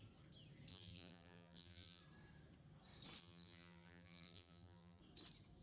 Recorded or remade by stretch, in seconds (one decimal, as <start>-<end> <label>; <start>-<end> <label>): 0.0-0.7 recorded; 0.7-2.0 remade; 2.0-3.2 recorded; 3.2-5.0 remade; 5.0-5.6 recorded